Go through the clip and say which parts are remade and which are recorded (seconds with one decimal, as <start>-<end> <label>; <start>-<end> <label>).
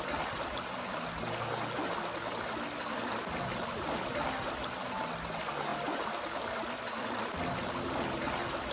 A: 0.0-8.7 recorded